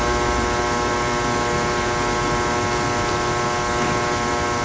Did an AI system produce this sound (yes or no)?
no